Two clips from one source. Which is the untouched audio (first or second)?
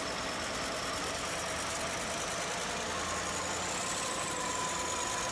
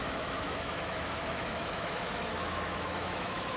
first